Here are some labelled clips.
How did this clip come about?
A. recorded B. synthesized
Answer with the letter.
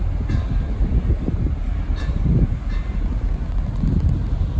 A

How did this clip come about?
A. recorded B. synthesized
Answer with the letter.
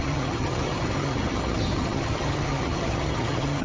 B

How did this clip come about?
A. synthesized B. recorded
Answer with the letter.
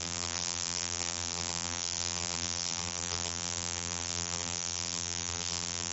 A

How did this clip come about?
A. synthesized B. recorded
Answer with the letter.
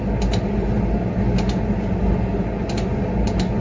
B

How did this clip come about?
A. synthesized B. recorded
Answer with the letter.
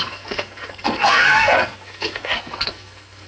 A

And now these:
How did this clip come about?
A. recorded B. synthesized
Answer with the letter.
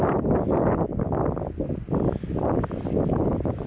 A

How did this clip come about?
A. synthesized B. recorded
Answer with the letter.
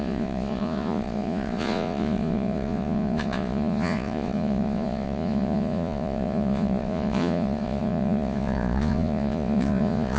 A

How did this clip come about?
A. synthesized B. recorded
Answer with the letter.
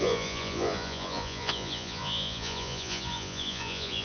A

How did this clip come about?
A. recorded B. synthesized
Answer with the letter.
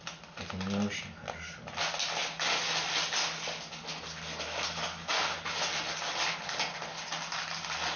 A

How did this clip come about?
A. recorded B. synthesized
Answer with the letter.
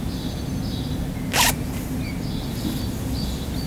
A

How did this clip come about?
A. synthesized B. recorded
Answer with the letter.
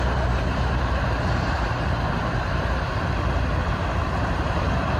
A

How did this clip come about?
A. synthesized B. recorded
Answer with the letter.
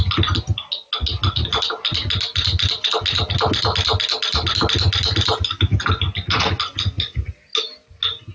B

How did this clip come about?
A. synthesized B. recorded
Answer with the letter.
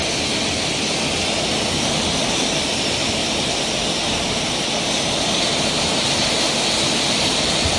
B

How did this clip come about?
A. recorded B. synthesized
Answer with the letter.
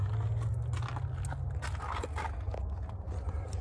A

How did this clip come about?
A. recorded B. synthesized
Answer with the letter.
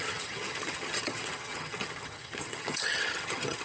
B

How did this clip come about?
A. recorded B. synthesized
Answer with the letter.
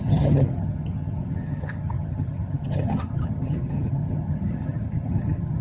B